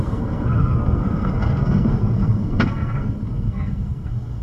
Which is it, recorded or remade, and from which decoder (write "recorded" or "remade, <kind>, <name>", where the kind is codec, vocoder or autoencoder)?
remade, codec, SNAC